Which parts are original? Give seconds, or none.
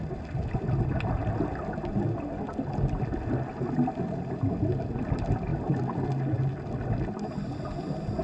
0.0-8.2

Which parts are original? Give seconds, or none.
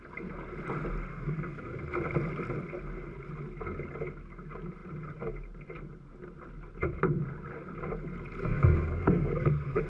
0.0-1.1; 1.8-8.4